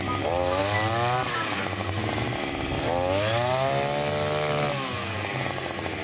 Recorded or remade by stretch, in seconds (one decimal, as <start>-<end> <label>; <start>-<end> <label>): 0.0-6.0 recorded